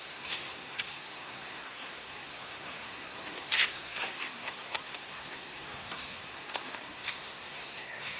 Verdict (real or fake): fake